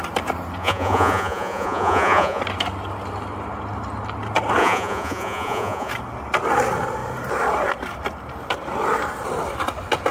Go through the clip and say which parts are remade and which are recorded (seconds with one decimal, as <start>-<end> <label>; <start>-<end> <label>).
0.0-0.6 recorded; 0.6-2.4 remade; 2.4-4.6 recorded; 4.6-5.9 remade; 5.9-10.1 recorded

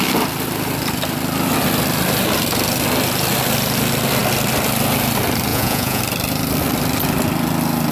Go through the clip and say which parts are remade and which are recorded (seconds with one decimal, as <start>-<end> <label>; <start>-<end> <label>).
0.0-5.5 recorded; 5.5-6.0 remade; 6.0-7.9 recorded

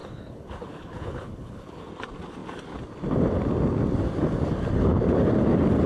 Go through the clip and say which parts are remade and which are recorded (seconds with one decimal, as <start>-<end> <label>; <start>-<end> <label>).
0.0-1.9 remade; 1.9-5.9 recorded

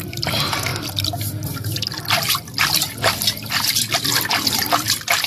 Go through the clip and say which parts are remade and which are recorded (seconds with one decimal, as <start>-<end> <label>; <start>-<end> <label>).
0.0-0.7 remade; 0.7-3.9 recorded; 3.9-5.3 remade

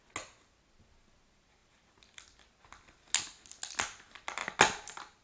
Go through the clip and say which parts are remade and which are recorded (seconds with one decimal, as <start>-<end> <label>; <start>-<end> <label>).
0.0-5.2 recorded

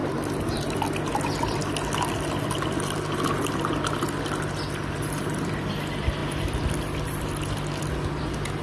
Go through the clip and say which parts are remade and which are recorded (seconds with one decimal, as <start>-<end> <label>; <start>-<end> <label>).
0.0-8.6 recorded

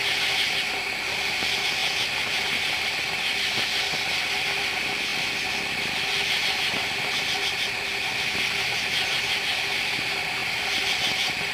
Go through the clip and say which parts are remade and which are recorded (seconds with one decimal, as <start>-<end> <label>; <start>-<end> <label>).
0.0-11.5 recorded